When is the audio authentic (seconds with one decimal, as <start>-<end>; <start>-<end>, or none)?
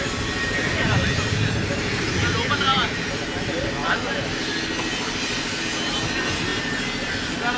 0.0-7.6